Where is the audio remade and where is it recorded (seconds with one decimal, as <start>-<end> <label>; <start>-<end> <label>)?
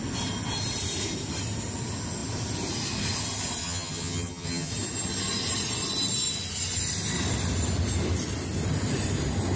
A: 0.0-3.6 recorded; 3.6-4.7 remade; 4.7-9.6 recorded